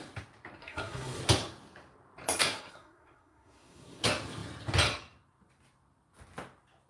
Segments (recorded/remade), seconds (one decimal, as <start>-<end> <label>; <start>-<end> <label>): 0.0-0.6 recorded; 0.6-1.2 remade; 1.2-2.4 recorded; 2.4-4.0 remade; 4.0-6.9 recorded